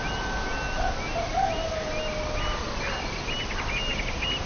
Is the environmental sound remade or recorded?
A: recorded